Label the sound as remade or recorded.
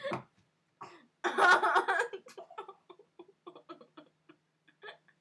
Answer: recorded